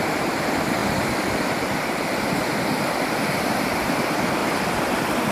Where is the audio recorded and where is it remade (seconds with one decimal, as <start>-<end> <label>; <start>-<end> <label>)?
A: 0.0-0.8 remade; 0.8-4.0 recorded; 4.0-4.4 remade; 4.4-5.3 recorded